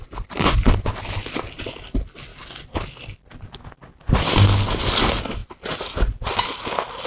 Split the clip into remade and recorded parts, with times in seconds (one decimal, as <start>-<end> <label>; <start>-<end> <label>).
0.0-7.1 recorded